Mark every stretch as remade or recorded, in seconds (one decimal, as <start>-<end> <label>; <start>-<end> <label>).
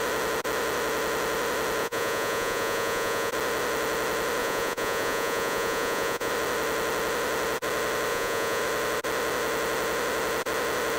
0.0-1.8 recorded; 1.8-3.3 remade; 3.3-4.4 recorded; 4.4-6.3 remade; 6.3-8.1 recorded; 8.1-8.6 remade; 8.6-11.0 recorded